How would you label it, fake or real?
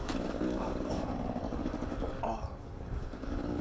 fake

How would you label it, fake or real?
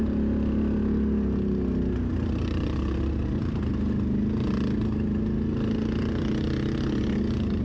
real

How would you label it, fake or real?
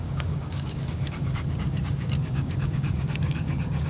fake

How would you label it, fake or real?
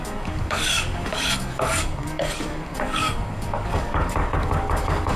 fake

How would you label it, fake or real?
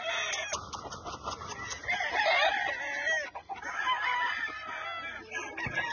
real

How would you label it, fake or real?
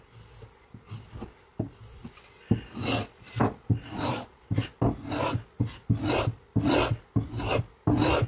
real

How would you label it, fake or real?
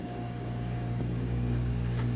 fake